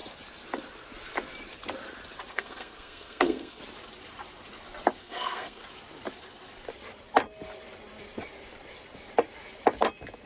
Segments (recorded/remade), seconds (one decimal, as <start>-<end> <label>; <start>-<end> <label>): 0.0-2.3 recorded; 2.3-3.6 remade; 3.6-5.0 recorded; 5.0-5.6 remade; 5.6-10.3 recorded